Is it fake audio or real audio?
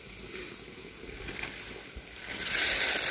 real